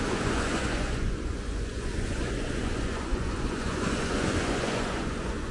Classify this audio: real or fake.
fake